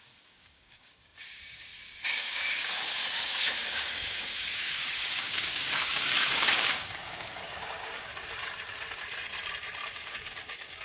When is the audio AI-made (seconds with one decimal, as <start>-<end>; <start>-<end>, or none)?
0.0-8.1; 9.9-10.8